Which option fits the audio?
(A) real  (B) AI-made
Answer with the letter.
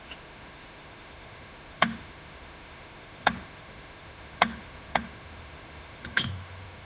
B